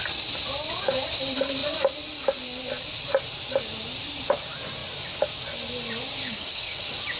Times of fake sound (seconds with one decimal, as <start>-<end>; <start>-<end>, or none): 6.2-6.8